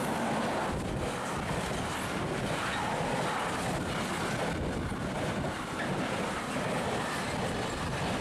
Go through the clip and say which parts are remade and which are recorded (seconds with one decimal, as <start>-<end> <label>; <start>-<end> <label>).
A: 0.0-8.2 recorded